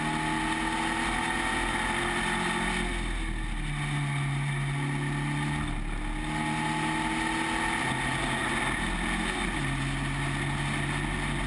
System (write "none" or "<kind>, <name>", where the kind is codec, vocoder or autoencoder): none